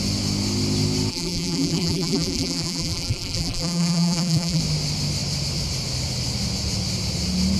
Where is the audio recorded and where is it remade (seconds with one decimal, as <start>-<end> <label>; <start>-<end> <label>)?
0.0-1.1 recorded; 1.1-4.6 remade; 4.6-7.6 recorded